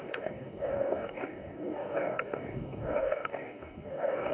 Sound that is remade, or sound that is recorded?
remade